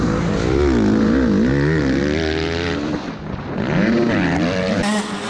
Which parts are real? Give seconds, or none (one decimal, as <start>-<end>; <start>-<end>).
0.0-5.3